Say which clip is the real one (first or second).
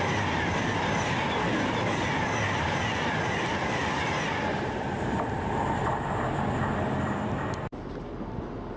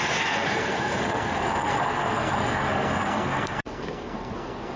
first